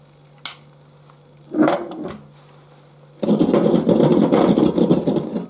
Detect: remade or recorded recorded